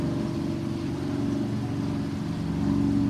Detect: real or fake real